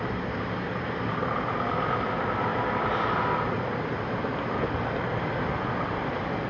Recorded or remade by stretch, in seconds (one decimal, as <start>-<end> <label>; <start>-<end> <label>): 0.0-6.5 recorded